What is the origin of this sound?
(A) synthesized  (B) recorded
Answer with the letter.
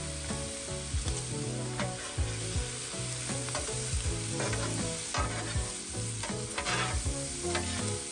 B